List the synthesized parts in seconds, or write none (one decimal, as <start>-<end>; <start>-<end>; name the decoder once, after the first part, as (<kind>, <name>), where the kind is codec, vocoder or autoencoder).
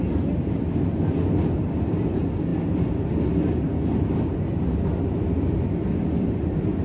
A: none